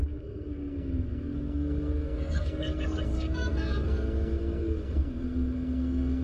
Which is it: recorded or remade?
remade